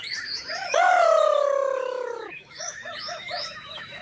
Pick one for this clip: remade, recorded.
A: remade